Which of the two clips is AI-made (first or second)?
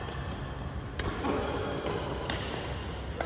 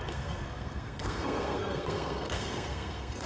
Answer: second